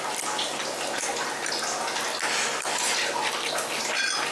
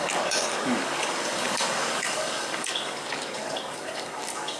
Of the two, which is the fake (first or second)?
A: second